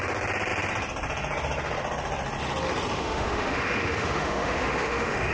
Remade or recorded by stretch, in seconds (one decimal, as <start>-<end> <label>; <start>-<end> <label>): 0.0-2.9 recorded; 2.9-5.3 remade

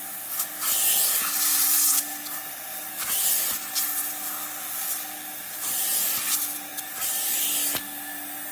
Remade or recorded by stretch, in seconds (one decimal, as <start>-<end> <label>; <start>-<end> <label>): 0.0-8.5 recorded

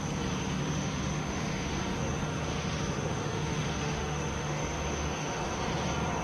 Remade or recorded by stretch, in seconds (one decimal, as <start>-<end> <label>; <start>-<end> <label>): 0.0-0.6 recorded; 0.6-1.8 remade; 1.8-2.3 recorded; 2.3-5.4 remade; 5.4-6.2 recorded

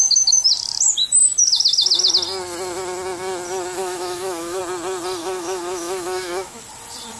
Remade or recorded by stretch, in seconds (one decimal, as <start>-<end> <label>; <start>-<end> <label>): 0.0-3.8 recorded; 3.8-4.6 remade; 4.6-5.2 recorded; 5.2-6.6 remade; 6.6-7.2 recorded

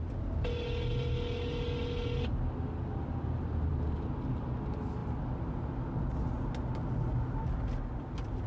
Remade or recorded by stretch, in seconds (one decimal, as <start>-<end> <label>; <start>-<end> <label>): 0.0-8.5 recorded

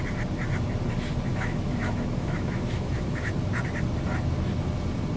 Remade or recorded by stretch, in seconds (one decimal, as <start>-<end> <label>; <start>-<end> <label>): 0.0-1.3 recorded; 1.3-3.3 remade; 3.3-5.2 recorded